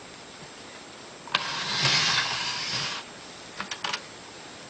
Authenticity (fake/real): real